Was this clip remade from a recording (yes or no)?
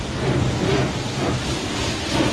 no